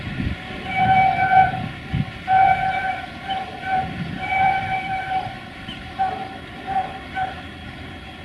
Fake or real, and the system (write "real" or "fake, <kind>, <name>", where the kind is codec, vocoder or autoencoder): fake, vocoder, BigVGAN v2